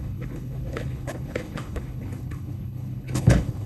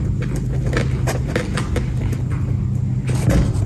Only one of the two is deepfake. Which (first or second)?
first